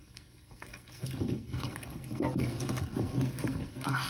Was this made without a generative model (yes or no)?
no